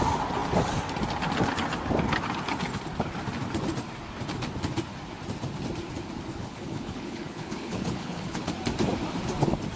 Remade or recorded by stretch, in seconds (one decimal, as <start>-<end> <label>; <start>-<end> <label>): 0.0-6.4 recorded; 6.4-8.5 remade; 8.5-9.8 recorded